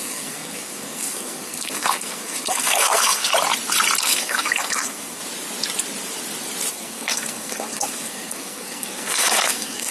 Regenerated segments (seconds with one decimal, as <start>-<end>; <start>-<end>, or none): 0.0-3.3; 4.0-5.2; 6.7-9.9